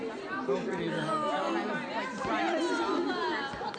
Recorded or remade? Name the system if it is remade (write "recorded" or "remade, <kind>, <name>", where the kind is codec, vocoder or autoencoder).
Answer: recorded